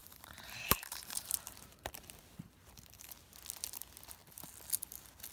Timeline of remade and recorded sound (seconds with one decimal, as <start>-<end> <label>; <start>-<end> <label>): 0.0-3.2 remade; 3.2-5.3 recorded